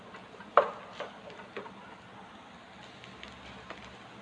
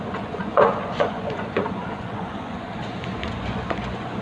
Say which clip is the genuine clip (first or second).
first